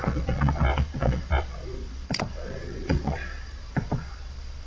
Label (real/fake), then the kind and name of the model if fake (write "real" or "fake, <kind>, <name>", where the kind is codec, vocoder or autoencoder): fake, vocoder, Vocos